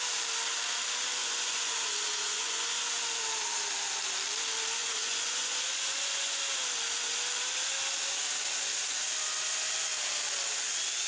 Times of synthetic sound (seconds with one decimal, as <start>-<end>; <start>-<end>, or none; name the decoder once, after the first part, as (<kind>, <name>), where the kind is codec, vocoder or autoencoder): 1.2-2.9 (vocoder, Vocos); 4.8-6.4